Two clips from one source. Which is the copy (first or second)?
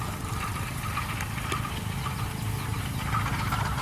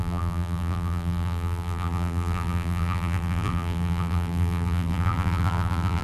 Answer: second